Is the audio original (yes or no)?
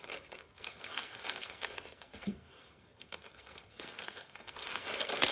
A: no